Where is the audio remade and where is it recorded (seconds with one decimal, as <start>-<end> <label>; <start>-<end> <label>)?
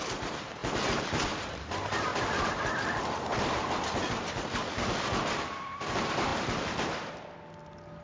0.0-8.0 recorded